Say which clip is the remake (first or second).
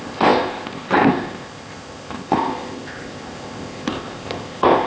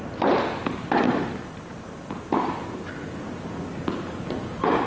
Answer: first